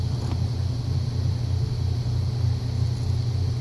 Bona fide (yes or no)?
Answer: yes